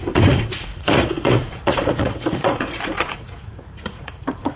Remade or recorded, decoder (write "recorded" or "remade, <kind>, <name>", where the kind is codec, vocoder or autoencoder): remade, vocoder, Vocos